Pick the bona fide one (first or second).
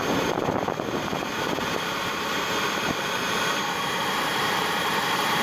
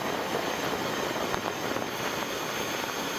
second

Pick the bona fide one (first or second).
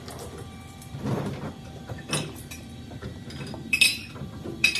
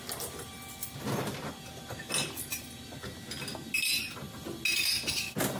second